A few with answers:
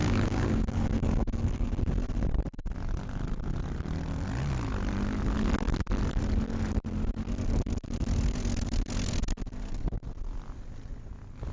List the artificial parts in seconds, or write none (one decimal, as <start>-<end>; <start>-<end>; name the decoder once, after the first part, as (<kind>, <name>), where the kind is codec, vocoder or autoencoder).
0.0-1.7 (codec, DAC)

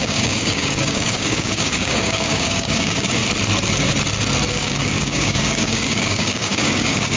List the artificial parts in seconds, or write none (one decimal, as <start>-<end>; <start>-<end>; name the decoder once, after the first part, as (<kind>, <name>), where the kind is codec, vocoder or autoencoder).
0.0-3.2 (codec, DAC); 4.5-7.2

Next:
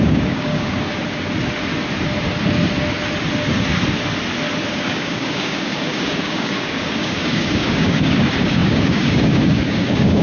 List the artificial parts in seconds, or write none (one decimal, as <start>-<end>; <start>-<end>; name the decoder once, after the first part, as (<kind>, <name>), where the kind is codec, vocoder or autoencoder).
0.0-1.0 (codec, DAC); 4.7-10.2

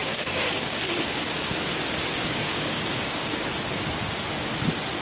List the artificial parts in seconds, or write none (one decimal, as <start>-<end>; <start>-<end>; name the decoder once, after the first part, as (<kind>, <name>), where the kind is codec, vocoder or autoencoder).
0.0-0.8 (codec, DAC); 2.0-3.5

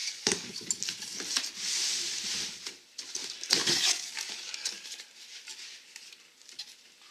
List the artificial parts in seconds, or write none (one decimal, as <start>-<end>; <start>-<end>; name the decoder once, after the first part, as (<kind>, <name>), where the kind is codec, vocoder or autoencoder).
0.0-0.7 (codec, DAC); 3.6-4.9

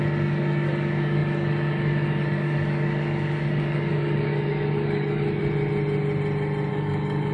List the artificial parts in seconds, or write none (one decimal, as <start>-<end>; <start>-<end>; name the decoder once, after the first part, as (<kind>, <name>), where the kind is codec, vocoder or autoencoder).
0.0-5.4 (codec, DAC); 6.7-7.3

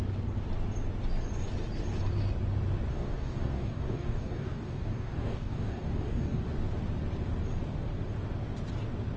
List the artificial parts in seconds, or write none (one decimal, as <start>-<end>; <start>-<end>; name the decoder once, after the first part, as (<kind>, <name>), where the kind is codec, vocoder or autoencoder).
2.9-6.4 (codec, DAC)

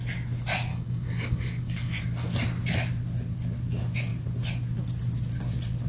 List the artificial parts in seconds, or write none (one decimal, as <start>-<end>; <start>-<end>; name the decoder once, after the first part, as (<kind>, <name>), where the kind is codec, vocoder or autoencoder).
0.7-2.0 (codec, DAC)